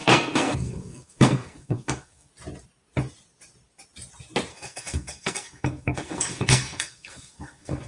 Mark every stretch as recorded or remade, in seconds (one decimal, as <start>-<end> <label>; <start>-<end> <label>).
0.0-2.3 remade; 2.3-4.5 recorded; 4.5-7.9 remade